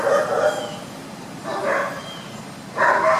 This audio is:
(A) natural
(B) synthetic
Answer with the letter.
A